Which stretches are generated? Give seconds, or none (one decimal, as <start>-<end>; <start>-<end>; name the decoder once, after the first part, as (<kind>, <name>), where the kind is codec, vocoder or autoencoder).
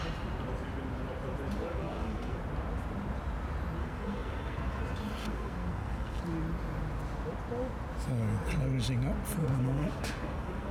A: 1.7-2.4 (codec, SNAC); 3.8-4.8; 5.2-6.2; 9.4-10.7